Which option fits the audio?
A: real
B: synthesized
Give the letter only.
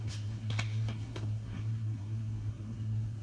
B